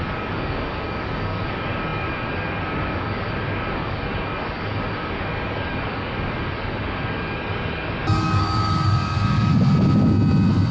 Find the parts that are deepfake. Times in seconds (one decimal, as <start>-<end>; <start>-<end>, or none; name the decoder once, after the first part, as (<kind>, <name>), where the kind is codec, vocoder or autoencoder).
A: 0.0-9.5 (codec, DAC)